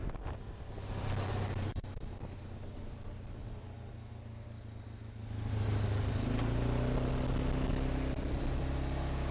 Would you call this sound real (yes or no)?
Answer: yes